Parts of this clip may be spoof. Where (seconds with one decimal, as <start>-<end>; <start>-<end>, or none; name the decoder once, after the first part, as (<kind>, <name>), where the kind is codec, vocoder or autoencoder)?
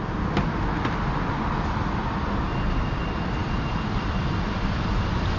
none